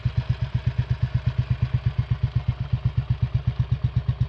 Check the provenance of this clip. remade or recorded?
recorded